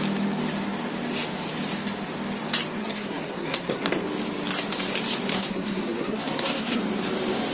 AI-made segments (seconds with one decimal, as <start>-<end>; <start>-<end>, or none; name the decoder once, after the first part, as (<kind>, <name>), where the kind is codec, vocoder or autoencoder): 2.8-3.9 (codec, SNAC); 5.3-6.8